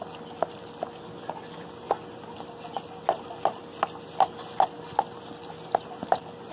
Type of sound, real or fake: real